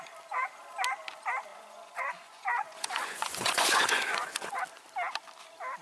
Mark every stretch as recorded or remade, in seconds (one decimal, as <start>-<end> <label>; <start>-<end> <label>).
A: 0.0-1.5 recorded; 1.5-4.6 remade; 4.6-5.8 recorded